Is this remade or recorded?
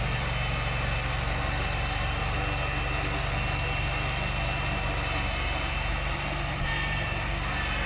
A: recorded